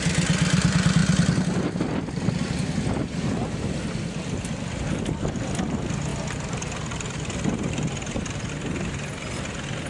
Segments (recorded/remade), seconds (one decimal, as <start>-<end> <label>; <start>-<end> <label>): 0.0-6.1 recorded; 6.1-8.5 remade; 8.5-9.9 recorded